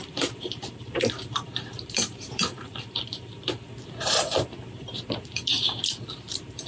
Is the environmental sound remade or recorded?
remade